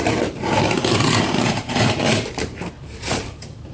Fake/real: fake